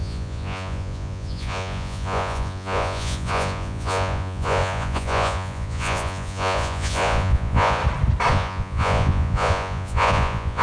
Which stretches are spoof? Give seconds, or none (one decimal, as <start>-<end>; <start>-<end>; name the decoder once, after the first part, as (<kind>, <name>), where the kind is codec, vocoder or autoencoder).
0.0-7.8 (vocoder, Vocos); 8.3-10.6